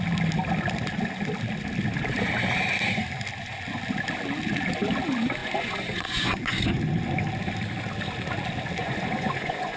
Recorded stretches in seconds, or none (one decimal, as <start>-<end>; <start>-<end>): 0.0-5.4; 6.8-8.8